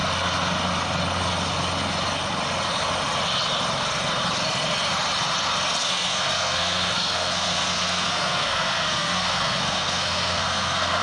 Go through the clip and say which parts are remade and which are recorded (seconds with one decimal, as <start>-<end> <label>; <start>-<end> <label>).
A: 0.0-5.8 recorded; 5.8-11.0 remade